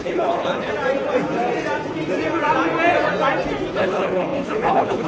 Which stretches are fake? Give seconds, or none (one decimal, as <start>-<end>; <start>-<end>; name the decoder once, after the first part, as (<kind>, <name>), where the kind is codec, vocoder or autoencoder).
0.0-0.7 (codec, HILCodec); 3.8-5.1